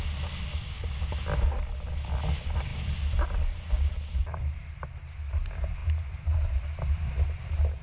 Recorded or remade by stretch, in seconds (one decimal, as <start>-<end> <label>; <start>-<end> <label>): 0.0-7.8 recorded

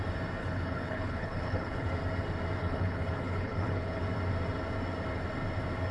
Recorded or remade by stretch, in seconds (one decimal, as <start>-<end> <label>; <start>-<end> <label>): 0.0-0.4 recorded; 0.4-1.9 remade; 1.9-2.6 recorded; 2.6-4.0 remade; 4.0-5.9 recorded

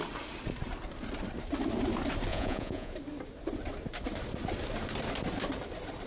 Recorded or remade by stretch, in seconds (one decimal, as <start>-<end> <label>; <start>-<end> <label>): 0.0-2.3 recorded; 2.3-2.9 remade; 2.9-6.1 recorded

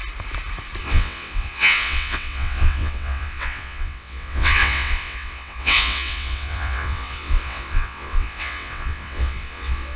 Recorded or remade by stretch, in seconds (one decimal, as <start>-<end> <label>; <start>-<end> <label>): 0.0-0.8 recorded; 0.8-10.0 remade

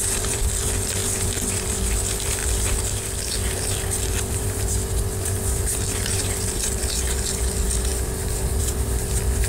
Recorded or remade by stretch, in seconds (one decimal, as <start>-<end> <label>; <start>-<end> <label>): 0.0-2.4 remade; 2.4-4.2 recorded; 4.2-9.5 remade

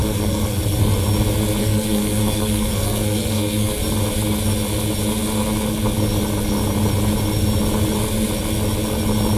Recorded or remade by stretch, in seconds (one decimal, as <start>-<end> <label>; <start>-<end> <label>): 0.0-0.6 remade; 0.6-1.6 recorded; 1.6-3.7 remade; 3.7-9.4 recorded

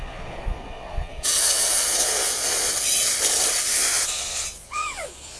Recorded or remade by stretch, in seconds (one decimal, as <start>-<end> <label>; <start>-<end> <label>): 0.0-2.7 remade; 2.7-3.6 recorded; 3.6-5.4 remade